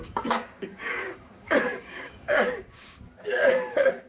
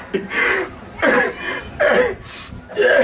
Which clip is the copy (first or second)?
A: first